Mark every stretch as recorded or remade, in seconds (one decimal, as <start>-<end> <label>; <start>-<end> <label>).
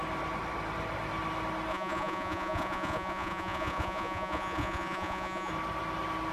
0.0-1.7 recorded; 1.7-5.5 remade; 5.5-6.3 recorded